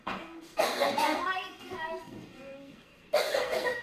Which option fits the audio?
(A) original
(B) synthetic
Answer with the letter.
B